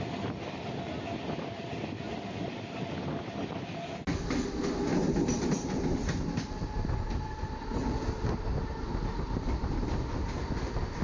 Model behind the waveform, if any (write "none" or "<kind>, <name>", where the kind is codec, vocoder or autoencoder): none